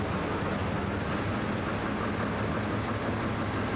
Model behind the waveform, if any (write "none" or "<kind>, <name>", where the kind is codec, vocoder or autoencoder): none